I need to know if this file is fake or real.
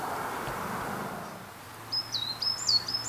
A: real